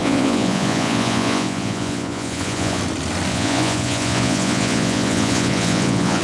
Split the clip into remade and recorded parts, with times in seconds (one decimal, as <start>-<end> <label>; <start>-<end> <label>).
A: 0.0-2.8 remade; 2.8-3.3 recorded; 3.3-6.2 remade